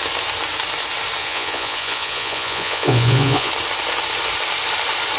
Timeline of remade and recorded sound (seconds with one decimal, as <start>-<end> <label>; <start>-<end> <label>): 0.0-1.2 recorded; 1.2-3.5 remade; 3.5-5.2 recorded